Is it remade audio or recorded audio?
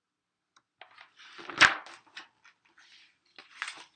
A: recorded